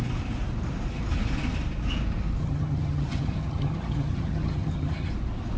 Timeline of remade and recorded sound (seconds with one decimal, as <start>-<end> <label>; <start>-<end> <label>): 0.0-2.4 recorded; 2.4-5.1 remade; 5.1-5.6 recorded